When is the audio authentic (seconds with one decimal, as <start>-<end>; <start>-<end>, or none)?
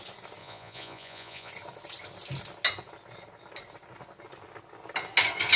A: 0.0-0.4; 1.5-5.6